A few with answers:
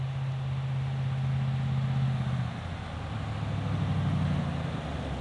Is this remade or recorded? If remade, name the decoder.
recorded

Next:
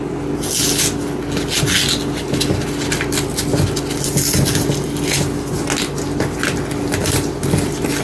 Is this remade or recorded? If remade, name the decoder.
recorded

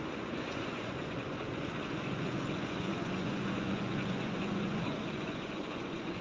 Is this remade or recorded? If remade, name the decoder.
remade, vocoder, Vocos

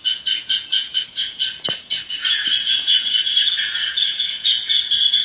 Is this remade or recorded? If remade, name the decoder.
remade, vocoder, Vocos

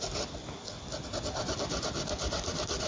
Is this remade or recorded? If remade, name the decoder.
recorded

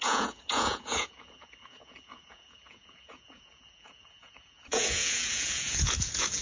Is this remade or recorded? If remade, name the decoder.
remade, vocoder, Vocos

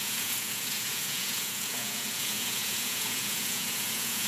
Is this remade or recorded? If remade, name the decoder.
remade, vocoder, Vocos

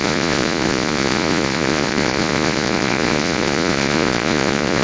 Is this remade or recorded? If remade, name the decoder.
remade, vocoder, Vocos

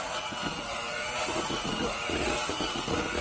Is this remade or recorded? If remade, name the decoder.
remade, vocoder, Vocos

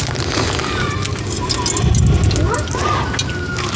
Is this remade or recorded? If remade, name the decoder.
recorded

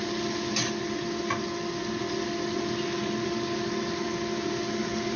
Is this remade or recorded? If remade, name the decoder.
recorded